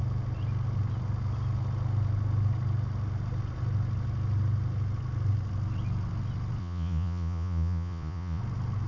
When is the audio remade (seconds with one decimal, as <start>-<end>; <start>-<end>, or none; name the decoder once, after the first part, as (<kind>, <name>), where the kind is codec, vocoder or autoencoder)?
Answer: 6.6-8.4 (vocoder, Vocos)